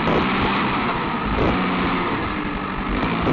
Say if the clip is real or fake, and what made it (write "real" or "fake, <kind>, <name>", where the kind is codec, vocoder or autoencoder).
real